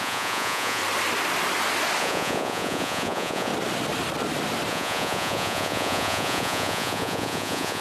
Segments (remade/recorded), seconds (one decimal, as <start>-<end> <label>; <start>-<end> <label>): 0.0-0.8 remade; 0.8-2.0 recorded; 2.0-3.5 remade; 3.5-4.7 recorded; 4.7-7.8 remade

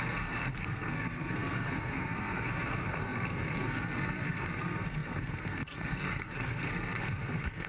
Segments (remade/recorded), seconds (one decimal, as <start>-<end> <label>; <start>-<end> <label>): 0.0-7.7 remade

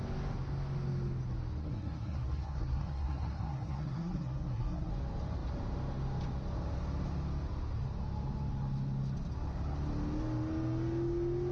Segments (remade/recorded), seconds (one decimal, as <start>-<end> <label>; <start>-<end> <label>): 0.0-1.6 recorded; 1.6-4.9 remade; 4.9-11.5 recorded